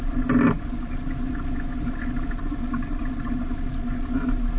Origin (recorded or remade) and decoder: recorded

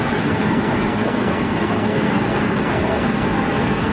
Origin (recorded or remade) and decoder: remade, codec, SNAC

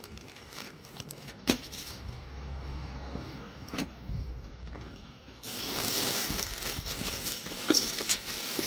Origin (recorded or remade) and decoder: remade, codec, DAC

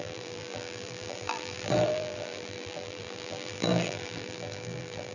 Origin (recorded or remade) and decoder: remade, vocoder, BigVGAN v2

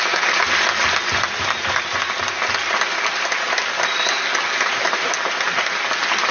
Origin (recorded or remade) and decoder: recorded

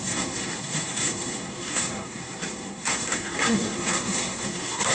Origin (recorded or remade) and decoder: remade, codec, SNAC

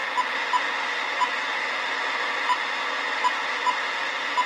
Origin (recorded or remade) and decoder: recorded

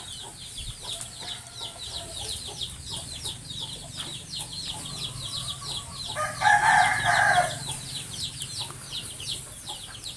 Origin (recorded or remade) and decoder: recorded